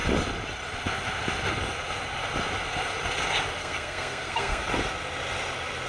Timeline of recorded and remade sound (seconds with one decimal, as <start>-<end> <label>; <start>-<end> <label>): 0.0-3.6 recorded; 3.6-4.7 remade; 4.7-5.9 recorded